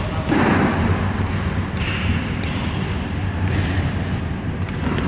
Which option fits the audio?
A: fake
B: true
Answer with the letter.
B